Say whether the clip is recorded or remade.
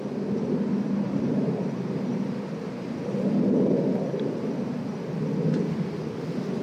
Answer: recorded